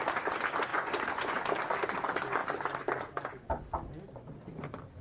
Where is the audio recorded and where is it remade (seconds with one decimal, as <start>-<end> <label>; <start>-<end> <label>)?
0.0-0.7 recorded; 0.7-1.4 remade; 1.4-5.0 recorded